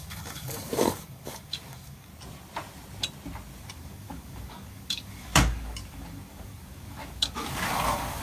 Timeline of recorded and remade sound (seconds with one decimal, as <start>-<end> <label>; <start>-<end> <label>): 0.0-2.1 remade; 2.1-3.7 recorded; 3.7-8.2 remade